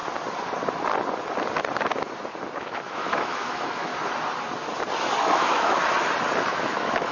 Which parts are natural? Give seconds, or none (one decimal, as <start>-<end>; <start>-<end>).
0.0-2.6; 3.9-5.2; 5.8-6.5